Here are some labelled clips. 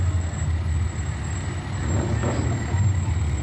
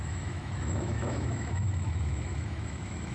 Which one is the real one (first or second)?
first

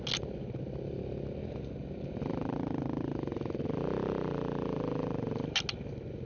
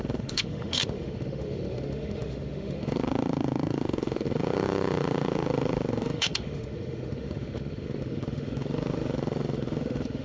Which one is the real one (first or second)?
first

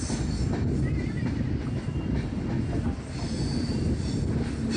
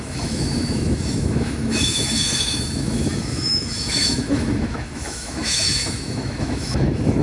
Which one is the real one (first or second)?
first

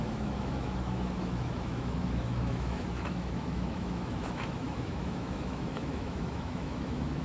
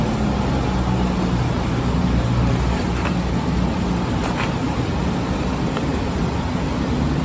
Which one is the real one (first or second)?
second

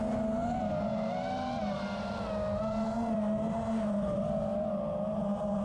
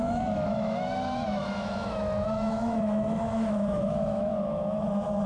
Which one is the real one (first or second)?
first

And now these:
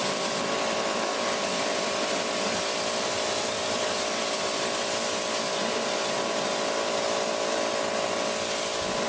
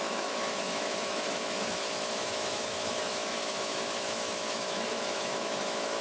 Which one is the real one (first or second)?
first